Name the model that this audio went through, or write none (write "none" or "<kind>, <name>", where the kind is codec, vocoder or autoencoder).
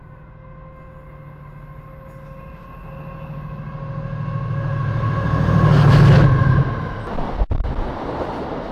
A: none